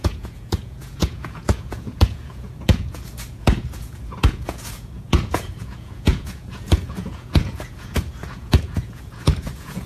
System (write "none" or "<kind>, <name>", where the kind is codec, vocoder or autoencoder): vocoder, Vocos